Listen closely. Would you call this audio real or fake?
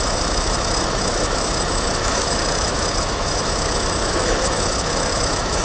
fake